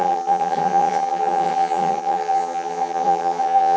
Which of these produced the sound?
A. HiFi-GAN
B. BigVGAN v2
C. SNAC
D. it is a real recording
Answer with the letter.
A